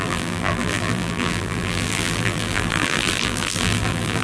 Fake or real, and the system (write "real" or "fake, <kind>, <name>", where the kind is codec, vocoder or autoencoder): fake, vocoder, BigVGAN v2